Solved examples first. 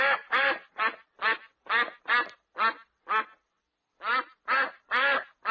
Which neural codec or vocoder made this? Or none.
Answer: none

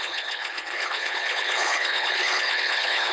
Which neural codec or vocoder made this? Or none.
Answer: codec, HILCodec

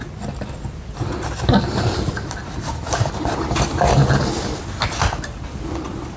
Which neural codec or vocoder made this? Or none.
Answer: none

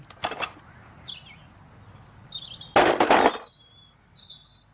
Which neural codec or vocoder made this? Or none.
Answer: none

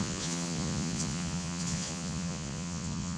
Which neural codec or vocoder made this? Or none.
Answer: vocoder, Vocos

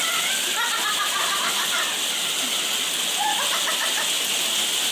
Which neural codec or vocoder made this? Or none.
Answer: none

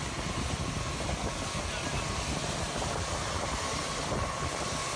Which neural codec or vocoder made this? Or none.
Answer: none